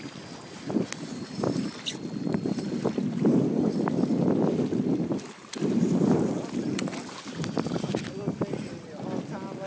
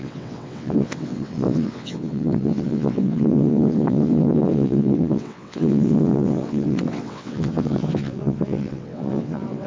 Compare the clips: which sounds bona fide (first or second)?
first